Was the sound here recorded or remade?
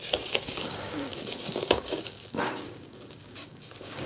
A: remade